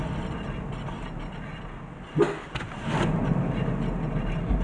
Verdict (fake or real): real